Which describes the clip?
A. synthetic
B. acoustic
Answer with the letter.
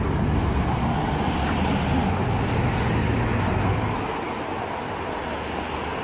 B